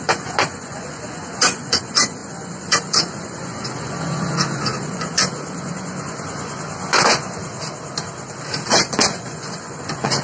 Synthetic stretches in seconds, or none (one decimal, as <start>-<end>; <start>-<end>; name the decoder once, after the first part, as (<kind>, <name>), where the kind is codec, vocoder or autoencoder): 0.0-7.4 (vocoder, Vocos); 8.8-10.2